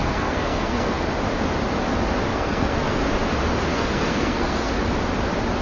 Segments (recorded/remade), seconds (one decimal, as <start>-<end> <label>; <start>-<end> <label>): 0.0-1.0 remade; 1.0-2.3 recorded; 2.3-3.0 remade; 3.0-3.7 recorded; 3.7-4.7 remade; 4.7-5.6 recorded